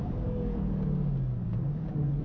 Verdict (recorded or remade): remade